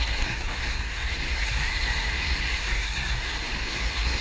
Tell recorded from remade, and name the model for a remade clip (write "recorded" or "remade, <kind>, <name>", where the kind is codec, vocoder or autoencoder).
remade, codec, SNAC